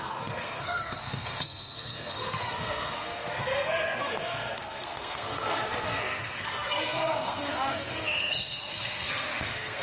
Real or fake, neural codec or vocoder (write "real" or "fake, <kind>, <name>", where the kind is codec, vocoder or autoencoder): fake, codec, SNAC